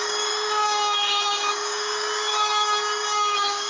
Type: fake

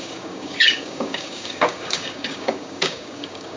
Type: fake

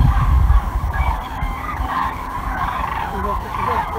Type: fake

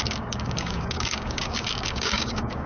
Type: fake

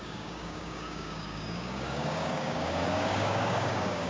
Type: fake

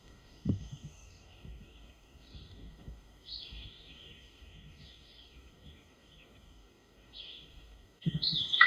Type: fake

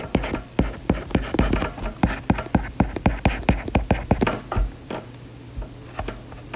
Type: real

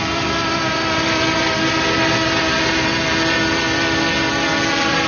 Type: real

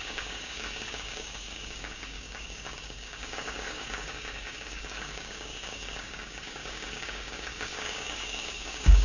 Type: fake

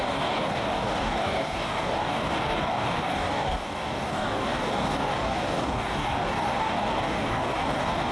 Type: fake